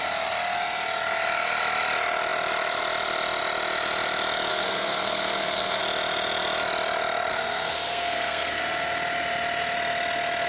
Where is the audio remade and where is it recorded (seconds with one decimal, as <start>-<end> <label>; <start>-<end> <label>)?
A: 0.0-4.5 recorded; 4.5-5.8 remade; 5.8-7.3 recorded; 7.3-8.6 remade; 8.6-10.5 recorded